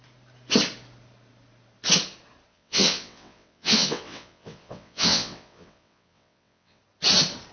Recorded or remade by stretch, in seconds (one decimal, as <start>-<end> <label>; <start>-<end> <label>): 0.0-2.5 recorded; 2.5-6.8 remade; 6.8-7.5 recorded